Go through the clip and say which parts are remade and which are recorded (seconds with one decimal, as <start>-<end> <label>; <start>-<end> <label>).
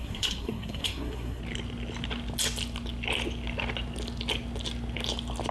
0.0-1.4 remade; 1.4-5.5 recorded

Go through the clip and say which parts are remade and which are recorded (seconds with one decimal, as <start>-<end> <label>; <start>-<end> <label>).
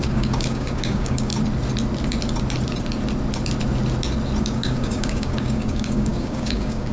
0.0-1.3 remade; 1.3-4.4 recorded; 4.4-6.9 remade